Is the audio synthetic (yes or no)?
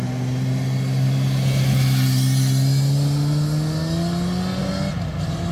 no